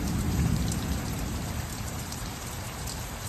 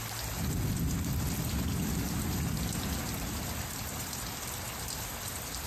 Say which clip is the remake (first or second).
first